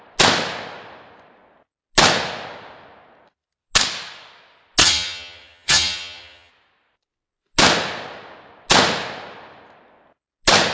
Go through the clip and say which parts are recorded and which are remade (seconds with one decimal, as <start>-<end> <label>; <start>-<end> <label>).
0.0-4.8 recorded; 4.8-6.5 remade; 6.5-10.7 recorded